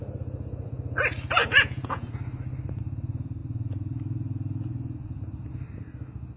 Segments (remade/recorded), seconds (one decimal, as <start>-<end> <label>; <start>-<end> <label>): 0.0-1.4 recorded; 1.4-2.1 remade; 2.1-6.4 recorded

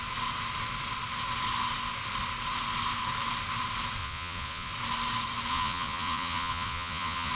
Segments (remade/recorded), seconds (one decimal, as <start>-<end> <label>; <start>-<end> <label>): 0.0-4.0 recorded; 4.0-4.7 remade; 4.7-5.5 recorded; 5.5-7.3 remade